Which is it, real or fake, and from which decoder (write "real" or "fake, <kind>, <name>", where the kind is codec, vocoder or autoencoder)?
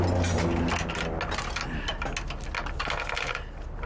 real